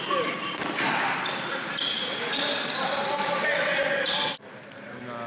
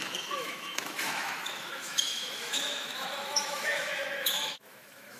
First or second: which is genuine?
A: first